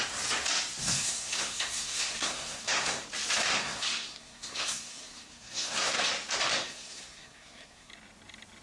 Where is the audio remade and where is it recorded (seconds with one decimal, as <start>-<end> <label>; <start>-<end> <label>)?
0.0-0.8 recorded; 0.8-3.0 remade; 3.0-3.5 recorded; 3.5-6.0 remade; 6.0-6.6 recorded; 6.6-7.9 remade; 7.9-8.6 recorded